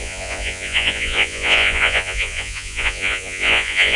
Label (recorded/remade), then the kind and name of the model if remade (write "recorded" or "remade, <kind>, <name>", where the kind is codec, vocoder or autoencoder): remade, vocoder, Vocos